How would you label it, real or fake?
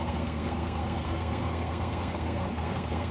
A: fake